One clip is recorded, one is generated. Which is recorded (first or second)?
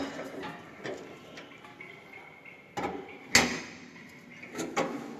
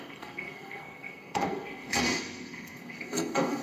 first